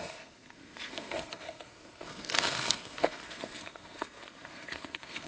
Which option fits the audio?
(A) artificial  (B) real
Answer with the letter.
A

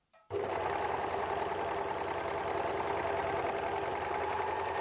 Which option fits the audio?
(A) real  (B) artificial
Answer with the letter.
A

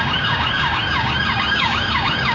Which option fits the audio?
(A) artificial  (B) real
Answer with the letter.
A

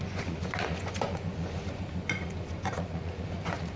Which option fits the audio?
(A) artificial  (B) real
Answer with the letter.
A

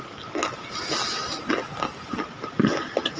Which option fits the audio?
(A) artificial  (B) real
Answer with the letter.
B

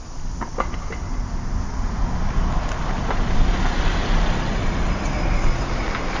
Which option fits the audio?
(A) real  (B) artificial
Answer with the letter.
A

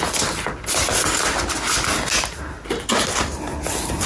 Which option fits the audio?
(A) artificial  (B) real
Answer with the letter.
B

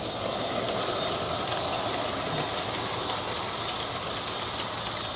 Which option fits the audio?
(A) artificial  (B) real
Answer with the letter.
B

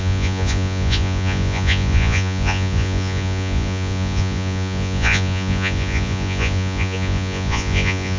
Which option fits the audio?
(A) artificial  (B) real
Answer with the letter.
A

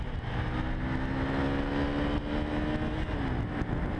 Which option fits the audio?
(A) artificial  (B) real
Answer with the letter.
B